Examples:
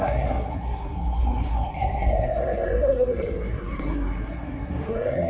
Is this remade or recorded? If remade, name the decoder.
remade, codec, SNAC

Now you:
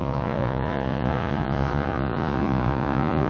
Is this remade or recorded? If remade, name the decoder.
remade, vocoder, Vocos